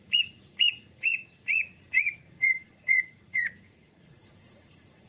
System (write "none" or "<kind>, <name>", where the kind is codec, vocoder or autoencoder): vocoder, Vocos